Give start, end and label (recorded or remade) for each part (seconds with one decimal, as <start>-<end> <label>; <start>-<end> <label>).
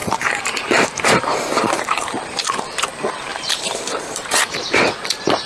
0.0-2.8 remade; 2.8-3.3 recorded; 3.3-4.9 remade; 4.9-5.5 recorded